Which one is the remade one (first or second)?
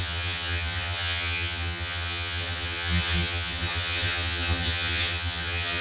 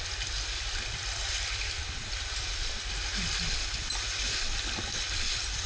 first